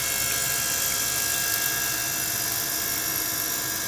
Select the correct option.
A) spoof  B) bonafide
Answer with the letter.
B